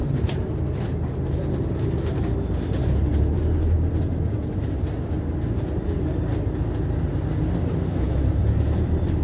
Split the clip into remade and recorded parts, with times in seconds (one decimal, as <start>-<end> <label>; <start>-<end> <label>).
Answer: 0.0-9.2 recorded